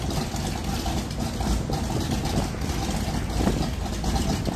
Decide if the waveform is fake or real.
real